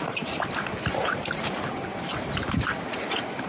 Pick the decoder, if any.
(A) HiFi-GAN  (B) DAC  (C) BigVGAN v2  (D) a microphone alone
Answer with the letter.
C